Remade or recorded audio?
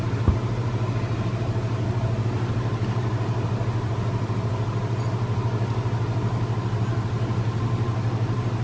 recorded